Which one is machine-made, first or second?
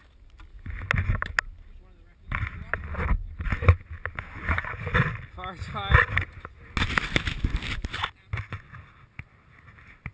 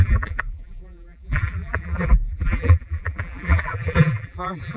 second